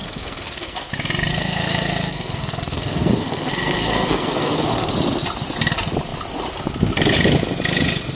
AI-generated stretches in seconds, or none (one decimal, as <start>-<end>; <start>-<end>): 0.0-0.9; 1.3-4.9